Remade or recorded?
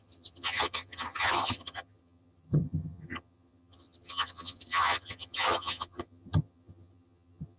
remade